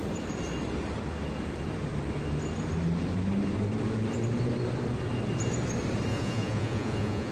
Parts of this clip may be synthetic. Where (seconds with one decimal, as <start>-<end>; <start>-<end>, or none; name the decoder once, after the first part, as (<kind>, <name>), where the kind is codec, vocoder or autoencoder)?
6.1-7.3 (vocoder, Vocos)